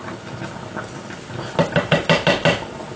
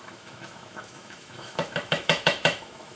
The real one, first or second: first